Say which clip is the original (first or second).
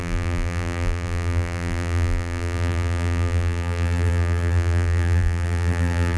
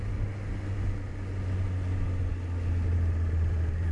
second